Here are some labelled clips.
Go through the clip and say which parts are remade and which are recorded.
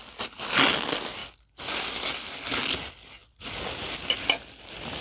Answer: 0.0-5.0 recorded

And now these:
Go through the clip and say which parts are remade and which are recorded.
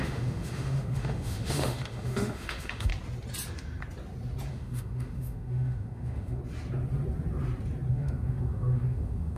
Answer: 0.0-2.9 remade; 2.9-4.5 recorded; 4.5-6.4 remade; 6.4-7.9 recorded; 7.9-9.4 remade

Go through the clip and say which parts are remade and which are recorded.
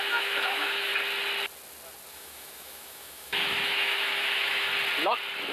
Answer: 0.0-0.9 remade; 0.9-2.1 recorded; 2.1-4.7 remade; 4.7-5.5 recorded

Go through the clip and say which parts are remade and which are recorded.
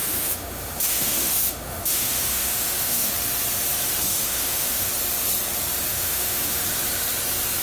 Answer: 0.0-3.1 remade; 3.1-4.1 recorded; 4.1-4.9 remade; 4.9-5.9 recorded; 5.9-6.6 remade; 6.6-7.6 recorded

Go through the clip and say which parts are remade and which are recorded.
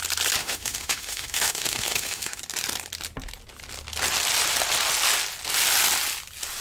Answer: 0.0-0.4 recorded; 0.4-2.4 remade; 2.4-6.6 recorded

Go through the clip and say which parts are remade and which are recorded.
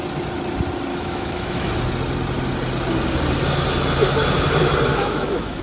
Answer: 0.0-0.9 recorded; 0.9-1.7 remade; 1.7-4.9 recorded; 4.9-5.6 remade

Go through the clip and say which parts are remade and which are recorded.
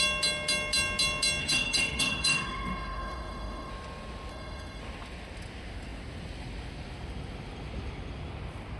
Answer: 0.0-1.4 recorded; 1.4-3.7 remade; 3.7-4.3 recorded; 4.3-4.8 remade; 4.8-8.8 recorded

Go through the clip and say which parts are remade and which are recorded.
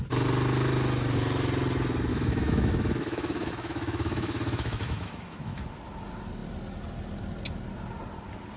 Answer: 0.0-2.1 recorded; 2.1-5.6 remade; 5.6-8.6 recorded